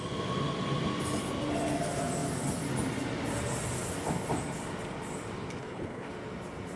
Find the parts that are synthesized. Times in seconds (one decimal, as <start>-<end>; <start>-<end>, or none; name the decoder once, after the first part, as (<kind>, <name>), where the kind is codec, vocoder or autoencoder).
5.6-6.1 (codec, HILCodec)